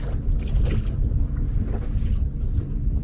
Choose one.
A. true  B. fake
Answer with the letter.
A